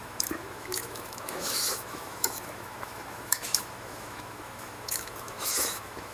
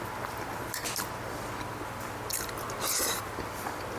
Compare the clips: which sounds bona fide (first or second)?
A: second